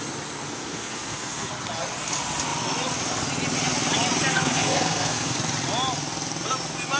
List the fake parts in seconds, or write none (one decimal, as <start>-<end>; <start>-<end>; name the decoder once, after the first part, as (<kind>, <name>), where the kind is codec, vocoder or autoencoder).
0.5-1.5 (codec, SNAC); 4.3-5.4